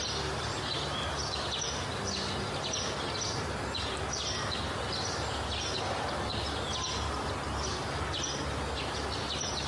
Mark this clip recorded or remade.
recorded